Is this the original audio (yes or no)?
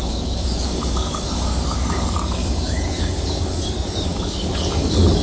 no